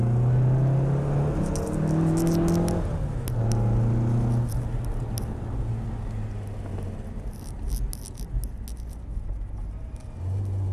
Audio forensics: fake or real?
real